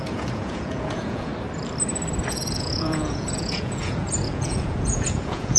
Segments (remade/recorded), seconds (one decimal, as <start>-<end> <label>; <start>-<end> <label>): 0.0-1.3 remade; 1.3-2.3 recorded; 2.3-5.6 remade